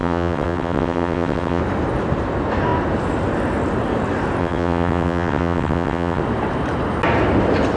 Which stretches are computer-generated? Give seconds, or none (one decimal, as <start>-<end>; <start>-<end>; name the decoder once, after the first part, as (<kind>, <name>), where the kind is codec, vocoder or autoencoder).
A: 0.0-1.6 (vocoder, WaveNeXt); 4.4-6.2